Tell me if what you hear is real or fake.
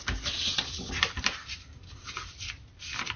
fake